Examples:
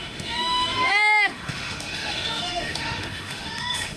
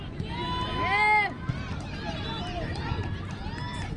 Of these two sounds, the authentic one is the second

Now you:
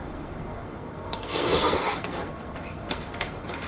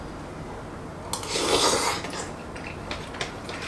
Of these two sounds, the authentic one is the second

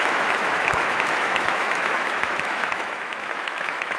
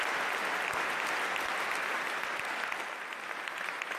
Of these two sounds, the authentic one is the second